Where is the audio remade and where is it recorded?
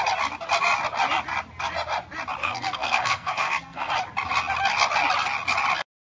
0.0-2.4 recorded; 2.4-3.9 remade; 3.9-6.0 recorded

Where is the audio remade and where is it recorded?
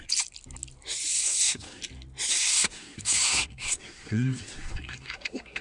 0.0-1.2 recorded; 1.2-1.8 remade; 1.8-2.3 recorded; 2.3-5.6 remade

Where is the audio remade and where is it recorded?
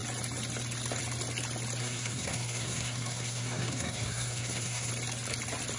0.0-1.8 recorded; 1.8-4.9 remade; 4.9-5.8 recorded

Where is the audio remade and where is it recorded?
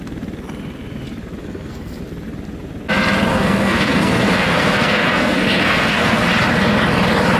0.0-1.4 recorded; 1.4-2.0 remade; 2.0-3.3 recorded; 3.3-6.2 remade; 6.2-7.4 recorded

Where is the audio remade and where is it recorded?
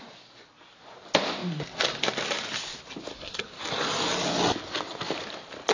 0.0-3.1 recorded; 3.1-3.6 remade; 3.6-5.7 recorded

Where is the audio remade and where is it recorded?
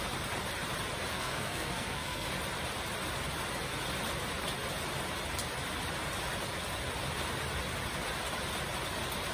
0.0-1.1 recorded; 1.1-2.3 remade; 2.3-9.3 recorded